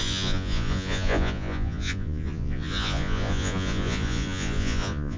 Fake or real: fake